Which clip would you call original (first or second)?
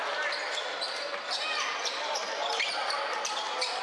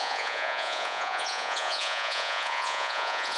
first